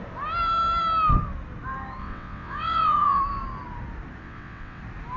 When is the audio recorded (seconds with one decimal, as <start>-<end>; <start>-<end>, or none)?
0.0-2.0; 3.2-4.2; 4.8-5.2